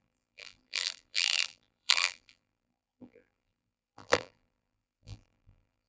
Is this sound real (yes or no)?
no